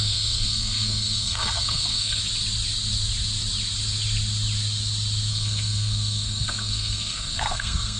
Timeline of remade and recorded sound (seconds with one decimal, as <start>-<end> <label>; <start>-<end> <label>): 0.0-2.2 remade; 2.2-5.3 recorded; 5.3-8.0 remade